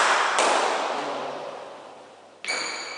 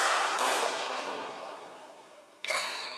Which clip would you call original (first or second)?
first